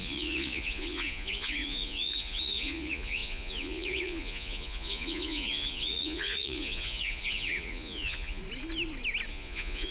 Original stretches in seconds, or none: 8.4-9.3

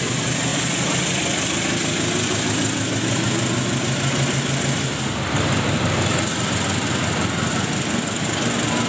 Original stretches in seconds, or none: 0.0-8.9

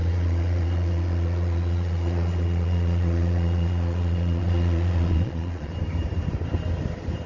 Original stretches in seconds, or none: 5.7-7.3

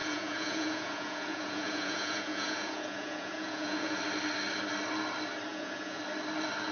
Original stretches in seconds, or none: 4.0-5.5; 6.0-6.7

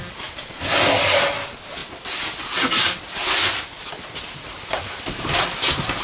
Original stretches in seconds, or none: 0.0-6.0

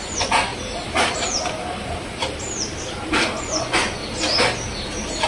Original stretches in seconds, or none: 0.5-3.4; 4.0-5.3

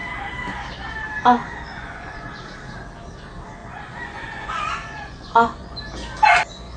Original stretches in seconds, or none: 0.0-1.4; 2.4-3.6; 5.8-6.8